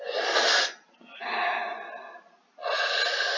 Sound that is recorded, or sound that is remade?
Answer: recorded